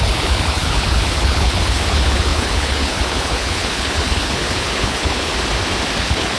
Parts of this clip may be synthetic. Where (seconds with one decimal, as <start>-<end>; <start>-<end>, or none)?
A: 0.0-5.3; 6.0-6.4